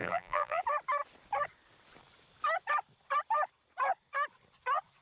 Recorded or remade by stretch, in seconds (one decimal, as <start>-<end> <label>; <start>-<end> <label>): 0.0-0.6 remade; 0.6-5.0 recorded